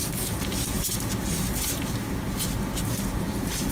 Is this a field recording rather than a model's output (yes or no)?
yes